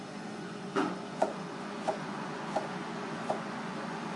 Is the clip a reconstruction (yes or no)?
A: yes